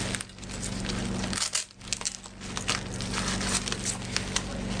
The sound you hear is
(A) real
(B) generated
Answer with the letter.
A